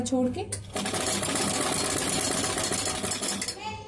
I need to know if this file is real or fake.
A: real